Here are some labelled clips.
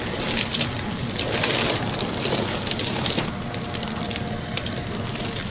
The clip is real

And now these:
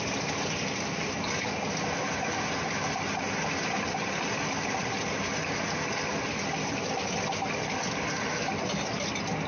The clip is real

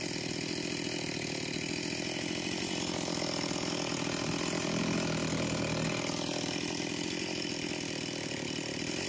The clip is real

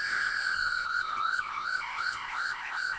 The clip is fake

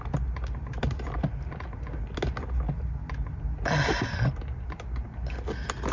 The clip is real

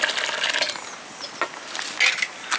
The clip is real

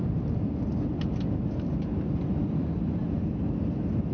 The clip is real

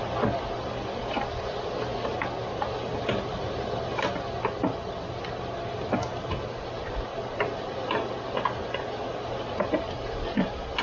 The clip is real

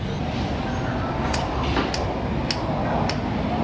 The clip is real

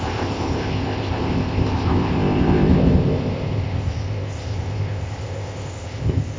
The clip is fake